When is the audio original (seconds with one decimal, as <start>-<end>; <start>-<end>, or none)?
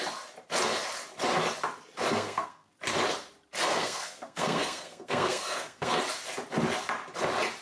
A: 0.0-2.1; 2.7-3.7; 6.0-7.6